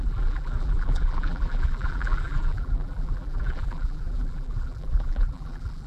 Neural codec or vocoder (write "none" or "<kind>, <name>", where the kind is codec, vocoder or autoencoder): vocoder, BigVGAN v2